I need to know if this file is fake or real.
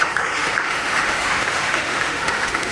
fake